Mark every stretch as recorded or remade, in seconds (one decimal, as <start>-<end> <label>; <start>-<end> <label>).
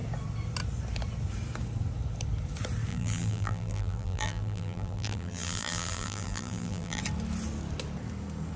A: 0.0-2.9 recorded; 2.9-7.0 remade; 7.0-8.6 recorded